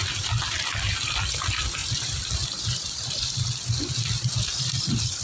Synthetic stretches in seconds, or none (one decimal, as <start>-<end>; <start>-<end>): 0.0-5.2